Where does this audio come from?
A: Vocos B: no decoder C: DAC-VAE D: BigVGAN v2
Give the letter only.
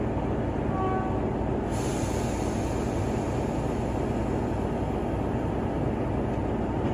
B